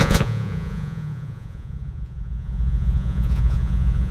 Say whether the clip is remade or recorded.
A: remade